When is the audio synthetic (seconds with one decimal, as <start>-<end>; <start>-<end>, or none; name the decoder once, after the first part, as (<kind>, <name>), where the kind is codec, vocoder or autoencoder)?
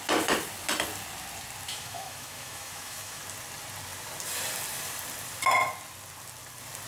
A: 1.7-3.2 (autoencoder, DAC-VAE)